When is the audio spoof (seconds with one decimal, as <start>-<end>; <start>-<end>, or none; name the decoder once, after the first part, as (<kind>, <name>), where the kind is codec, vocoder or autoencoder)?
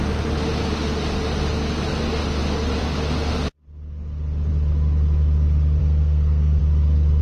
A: 5.8-6.6 (codec, SNAC)